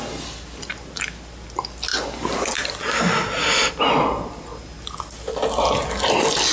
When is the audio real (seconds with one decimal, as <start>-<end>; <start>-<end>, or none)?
0.0-6.5